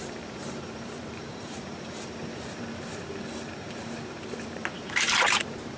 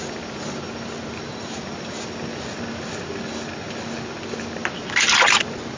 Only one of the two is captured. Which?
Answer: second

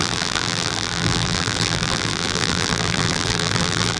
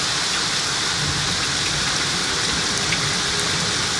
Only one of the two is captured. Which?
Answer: second